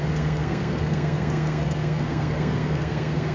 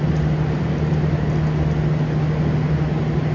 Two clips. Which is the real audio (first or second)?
second